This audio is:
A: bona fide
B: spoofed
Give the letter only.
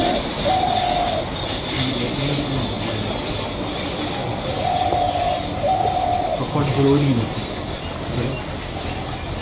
A